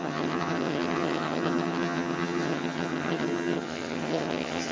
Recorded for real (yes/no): no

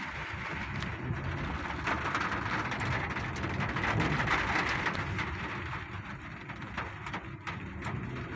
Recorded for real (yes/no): yes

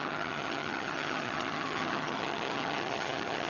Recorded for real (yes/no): no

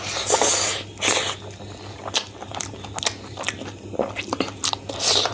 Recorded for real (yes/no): yes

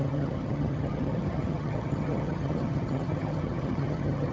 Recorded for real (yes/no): no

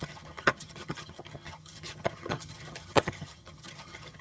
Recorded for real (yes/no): no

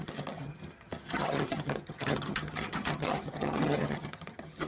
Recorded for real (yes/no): no